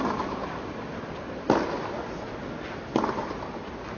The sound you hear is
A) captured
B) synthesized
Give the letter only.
A